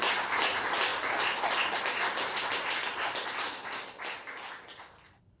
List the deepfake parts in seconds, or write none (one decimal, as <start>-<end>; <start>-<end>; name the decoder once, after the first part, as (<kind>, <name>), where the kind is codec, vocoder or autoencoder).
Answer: none